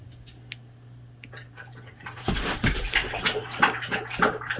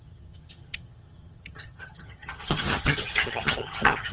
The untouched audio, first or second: first